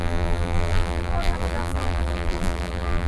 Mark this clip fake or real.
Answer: fake